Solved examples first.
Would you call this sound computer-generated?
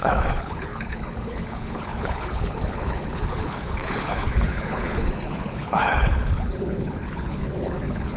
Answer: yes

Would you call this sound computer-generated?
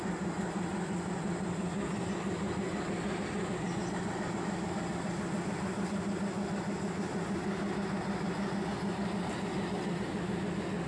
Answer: no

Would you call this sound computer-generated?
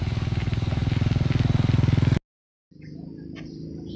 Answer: no